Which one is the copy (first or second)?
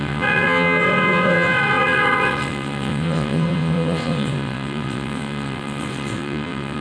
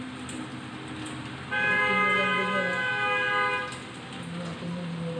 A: first